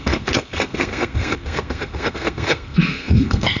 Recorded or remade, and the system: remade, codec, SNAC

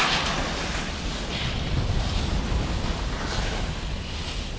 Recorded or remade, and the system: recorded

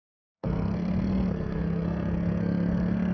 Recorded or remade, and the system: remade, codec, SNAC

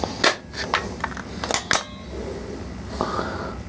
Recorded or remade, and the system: recorded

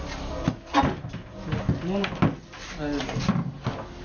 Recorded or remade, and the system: recorded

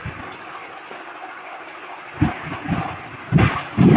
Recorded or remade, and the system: recorded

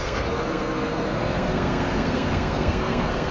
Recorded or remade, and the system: remade, codec, SNAC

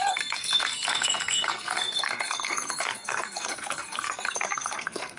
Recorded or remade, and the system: remade, codec, SNAC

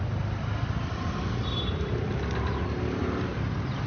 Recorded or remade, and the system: recorded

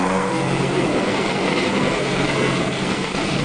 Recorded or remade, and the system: remade, codec, SNAC